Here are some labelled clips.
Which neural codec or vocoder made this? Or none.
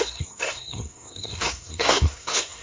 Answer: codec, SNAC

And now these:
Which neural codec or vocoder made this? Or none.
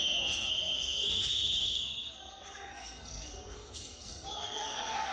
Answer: codec, SNAC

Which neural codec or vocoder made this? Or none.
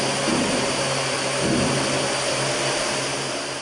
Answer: none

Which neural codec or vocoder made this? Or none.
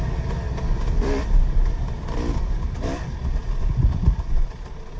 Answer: none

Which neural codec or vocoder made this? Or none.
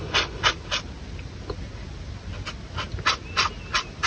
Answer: none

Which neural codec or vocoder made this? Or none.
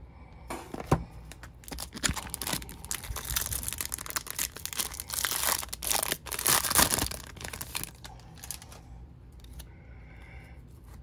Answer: none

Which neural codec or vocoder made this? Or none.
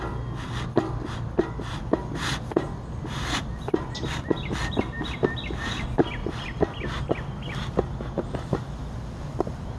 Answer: none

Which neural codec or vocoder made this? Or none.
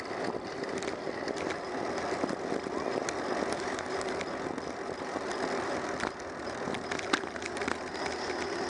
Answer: none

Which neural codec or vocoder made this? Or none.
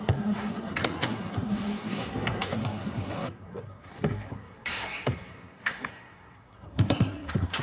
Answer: codec, SNAC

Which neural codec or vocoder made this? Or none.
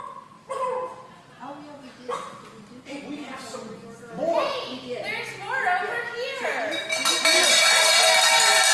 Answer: none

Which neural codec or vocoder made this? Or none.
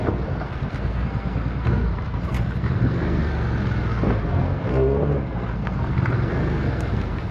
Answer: codec, SNAC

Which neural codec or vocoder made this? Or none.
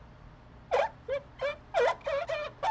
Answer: none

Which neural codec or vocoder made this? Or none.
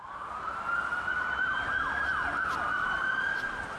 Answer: none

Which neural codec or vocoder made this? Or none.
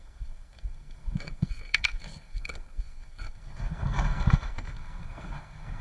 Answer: codec, SNAC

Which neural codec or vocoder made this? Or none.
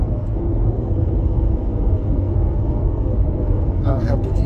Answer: codec, SNAC